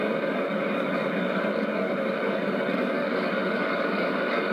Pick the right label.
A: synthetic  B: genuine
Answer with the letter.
A